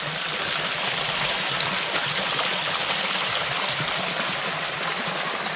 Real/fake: real